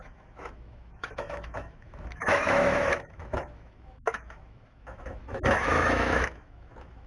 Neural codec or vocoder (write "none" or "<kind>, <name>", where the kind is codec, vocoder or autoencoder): autoencoder, DAC-VAE